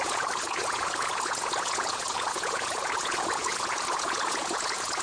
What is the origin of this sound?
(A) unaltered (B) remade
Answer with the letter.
B